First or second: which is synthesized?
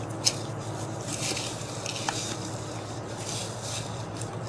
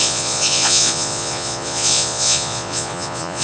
second